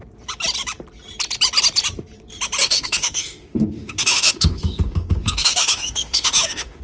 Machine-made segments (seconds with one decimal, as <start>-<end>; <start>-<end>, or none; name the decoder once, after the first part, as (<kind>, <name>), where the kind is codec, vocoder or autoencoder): 2.6-6.8 (autoencoder, DAC-VAE)